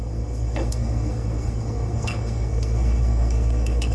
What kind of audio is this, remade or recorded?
remade